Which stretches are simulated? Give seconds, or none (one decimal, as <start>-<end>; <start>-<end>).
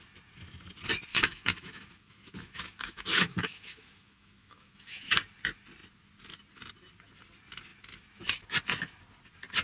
1.1-5.1